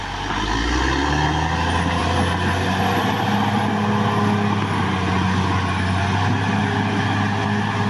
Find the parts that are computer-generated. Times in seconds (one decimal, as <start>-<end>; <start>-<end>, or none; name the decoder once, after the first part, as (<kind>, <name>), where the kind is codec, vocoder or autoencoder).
none